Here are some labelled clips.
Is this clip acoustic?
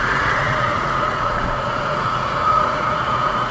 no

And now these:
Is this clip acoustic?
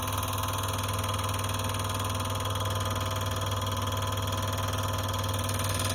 yes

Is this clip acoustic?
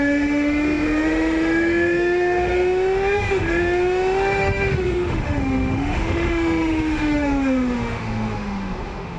no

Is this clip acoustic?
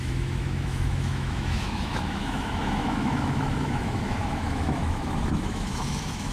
no